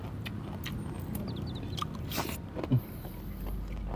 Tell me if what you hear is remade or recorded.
recorded